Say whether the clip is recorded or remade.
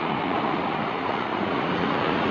remade